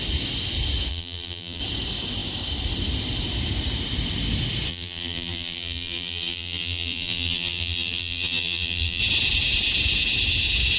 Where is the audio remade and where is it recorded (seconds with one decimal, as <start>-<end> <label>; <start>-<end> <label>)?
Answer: 0.0-0.9 recorded; 0.9-1.6 remade; 1.6-4.7 recorded; 4.7-9.0 remade; 9.0-10.8 recorded